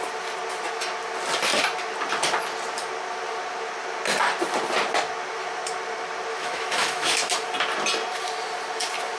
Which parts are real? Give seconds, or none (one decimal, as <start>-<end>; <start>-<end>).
0.0-6.3; 7.2-9.2